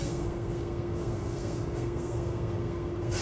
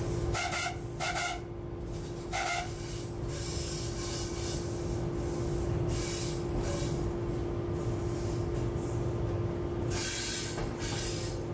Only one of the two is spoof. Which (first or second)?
first